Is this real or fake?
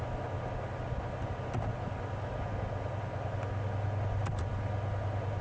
real